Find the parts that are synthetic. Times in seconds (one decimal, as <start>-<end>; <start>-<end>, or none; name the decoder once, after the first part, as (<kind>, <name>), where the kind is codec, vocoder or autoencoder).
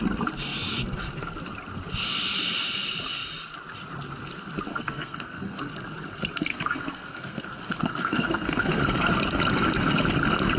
4.7-5.6 (codec, SNAC); 6.5-8.8